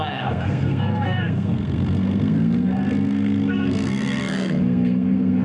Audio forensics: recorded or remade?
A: remade